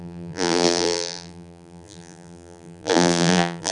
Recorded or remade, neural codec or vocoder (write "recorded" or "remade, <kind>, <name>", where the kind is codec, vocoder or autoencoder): remade, vocoder, BigVGAN v2